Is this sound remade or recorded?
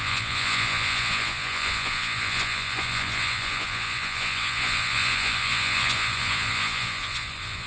remade